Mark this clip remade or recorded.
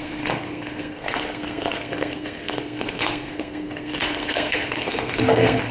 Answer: remade